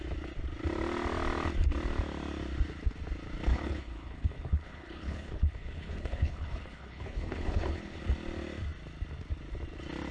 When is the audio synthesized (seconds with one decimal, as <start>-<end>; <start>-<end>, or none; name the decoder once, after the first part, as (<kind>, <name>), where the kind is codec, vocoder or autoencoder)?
3.5-8.0 (codec, HILCodec)